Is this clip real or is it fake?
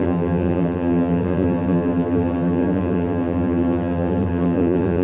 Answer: fake